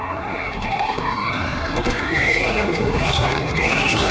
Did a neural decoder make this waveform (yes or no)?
yes